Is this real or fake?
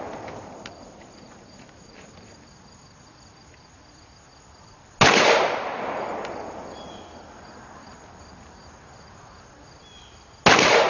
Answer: real